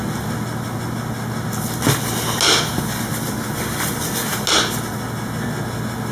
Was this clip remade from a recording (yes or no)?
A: no